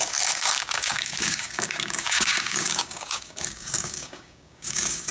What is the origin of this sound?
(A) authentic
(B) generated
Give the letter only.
B